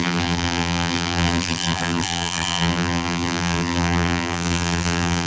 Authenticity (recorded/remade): remade